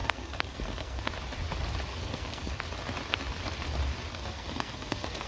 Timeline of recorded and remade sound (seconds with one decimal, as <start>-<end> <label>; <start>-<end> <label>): 0.0-1.1 remade; 1.1-1.9 recorded; 1.9-2.5 remade; 2.5-4.1 recorded; 4.1-5.3 remade